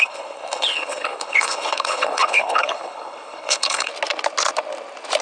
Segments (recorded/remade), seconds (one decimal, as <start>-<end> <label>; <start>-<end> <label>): 0.0-3.9 remade; 3.9-5.2 recorded